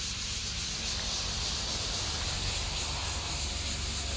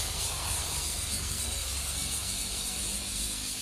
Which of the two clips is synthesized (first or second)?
second